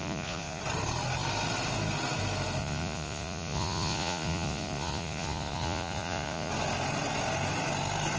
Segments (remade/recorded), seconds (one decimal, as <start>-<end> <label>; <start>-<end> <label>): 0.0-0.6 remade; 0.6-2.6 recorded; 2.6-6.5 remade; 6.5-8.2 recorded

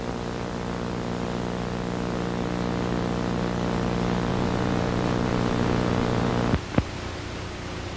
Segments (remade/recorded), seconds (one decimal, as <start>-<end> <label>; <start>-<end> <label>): 0.0-4.3 recorded; 4.3-6.3 remade; 6.3-8.0 recorded

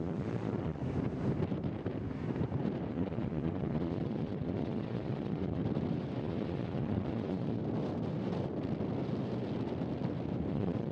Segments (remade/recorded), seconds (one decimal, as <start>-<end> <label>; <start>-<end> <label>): 0.0-0.8 remade; 0.8-2.9 recorded; 2.9-5.6 remade; 5.6-6.2 recorded; 6.2-7.6 remade; 7.6-10.5 recorded; 10.5-10.9 remade